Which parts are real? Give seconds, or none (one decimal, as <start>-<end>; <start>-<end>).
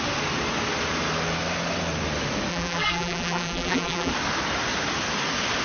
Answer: 0.0-2.5; 4.1-5.6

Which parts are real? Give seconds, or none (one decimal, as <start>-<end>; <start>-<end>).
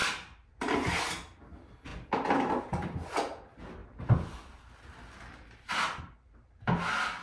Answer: 0.5-3.8; 6.0-7.2